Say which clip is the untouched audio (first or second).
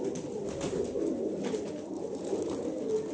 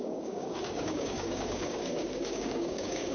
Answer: first